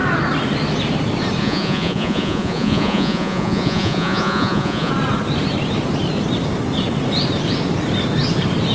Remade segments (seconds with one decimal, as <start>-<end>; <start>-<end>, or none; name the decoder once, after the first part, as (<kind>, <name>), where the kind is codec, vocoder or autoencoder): 1.4-4.9 (vocoder, Vocos)